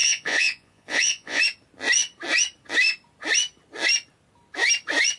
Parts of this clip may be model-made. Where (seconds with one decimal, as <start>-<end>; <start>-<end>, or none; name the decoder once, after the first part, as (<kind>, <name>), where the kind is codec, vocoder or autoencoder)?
0.0-1.4 (vocoder, Vocos)